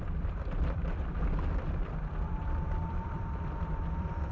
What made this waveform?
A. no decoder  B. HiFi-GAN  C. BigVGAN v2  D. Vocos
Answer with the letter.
C